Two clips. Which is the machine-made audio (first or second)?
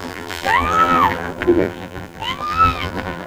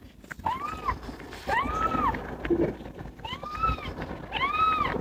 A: first